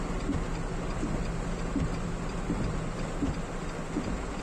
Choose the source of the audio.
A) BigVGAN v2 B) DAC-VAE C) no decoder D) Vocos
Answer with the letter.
C